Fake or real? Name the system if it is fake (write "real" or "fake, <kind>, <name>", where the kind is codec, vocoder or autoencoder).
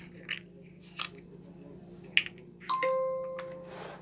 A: real